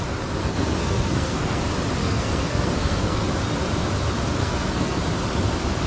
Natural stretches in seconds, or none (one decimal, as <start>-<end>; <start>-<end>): 0.0-0.4; 1.6-2.0; 3.3-4.4; 5.0-5.9